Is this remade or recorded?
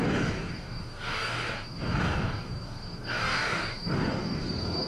remade